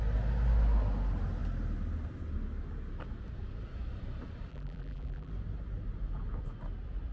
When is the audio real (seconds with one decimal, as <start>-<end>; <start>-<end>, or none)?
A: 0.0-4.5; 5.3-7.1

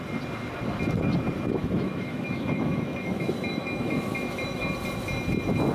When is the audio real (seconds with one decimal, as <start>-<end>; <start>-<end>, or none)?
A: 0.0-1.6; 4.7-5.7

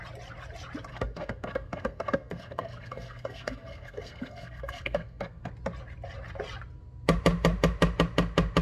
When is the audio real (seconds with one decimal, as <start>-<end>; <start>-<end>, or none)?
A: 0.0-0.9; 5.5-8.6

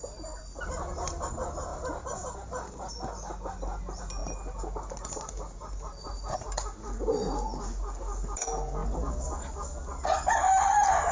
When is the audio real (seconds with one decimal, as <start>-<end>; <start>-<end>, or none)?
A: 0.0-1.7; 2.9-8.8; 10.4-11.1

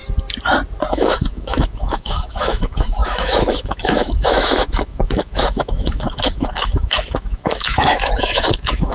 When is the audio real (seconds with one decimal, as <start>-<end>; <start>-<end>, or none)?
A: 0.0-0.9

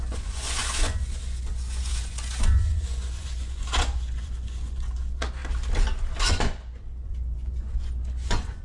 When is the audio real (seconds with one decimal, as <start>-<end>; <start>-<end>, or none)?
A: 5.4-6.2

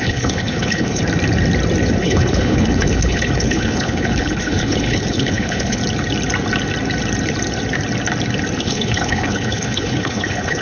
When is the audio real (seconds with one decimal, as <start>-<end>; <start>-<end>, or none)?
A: 1.0-2.0; 5.8-8.6